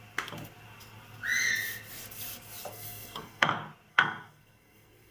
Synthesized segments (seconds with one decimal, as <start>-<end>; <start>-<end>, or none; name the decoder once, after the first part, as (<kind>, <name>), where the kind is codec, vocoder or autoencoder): 2.7-3.5 (codec, SNAC); 3.9-5.1